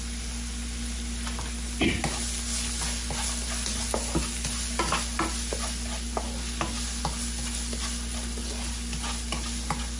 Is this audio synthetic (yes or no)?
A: no